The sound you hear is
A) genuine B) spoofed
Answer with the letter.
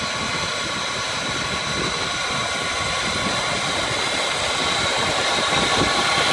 A